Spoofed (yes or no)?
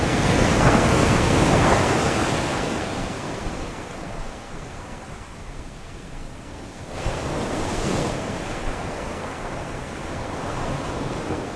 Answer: yes